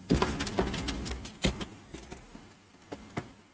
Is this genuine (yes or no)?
yes